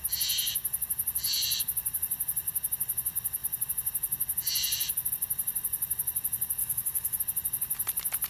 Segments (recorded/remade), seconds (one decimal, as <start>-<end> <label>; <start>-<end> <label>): 0.0-6.6 recorded; 6.6-7.2 remade; 7.2-8.3 recorded